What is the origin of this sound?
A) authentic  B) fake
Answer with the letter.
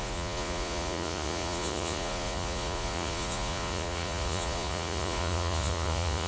B